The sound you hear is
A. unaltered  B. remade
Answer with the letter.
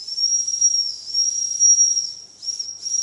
A